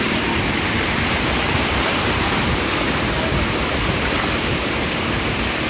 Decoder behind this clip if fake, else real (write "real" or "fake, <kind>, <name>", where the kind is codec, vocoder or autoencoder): fake, vocoder, BigVGAN v2